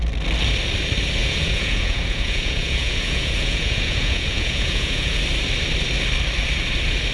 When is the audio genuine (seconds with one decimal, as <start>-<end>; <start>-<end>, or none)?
0.0-1.2; 5.2-7.1